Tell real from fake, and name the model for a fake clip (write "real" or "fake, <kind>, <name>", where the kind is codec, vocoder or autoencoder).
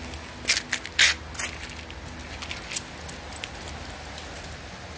real